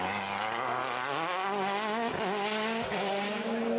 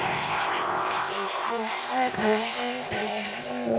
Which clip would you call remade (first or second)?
second